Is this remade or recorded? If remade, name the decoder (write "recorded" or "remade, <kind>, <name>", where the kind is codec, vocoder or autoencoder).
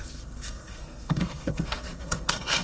remade, codec, SNAC